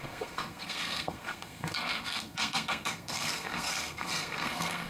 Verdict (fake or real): fake